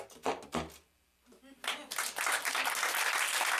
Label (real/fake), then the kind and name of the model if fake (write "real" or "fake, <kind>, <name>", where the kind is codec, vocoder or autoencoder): real